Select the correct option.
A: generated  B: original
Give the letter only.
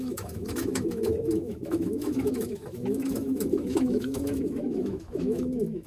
A